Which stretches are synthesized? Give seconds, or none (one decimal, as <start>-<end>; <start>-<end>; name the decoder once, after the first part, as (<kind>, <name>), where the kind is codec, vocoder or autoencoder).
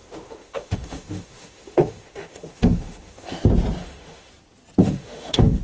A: 0.0-3.4 (autoencoder, DAC-VAE); 3.8-4.3; 4.8-5.6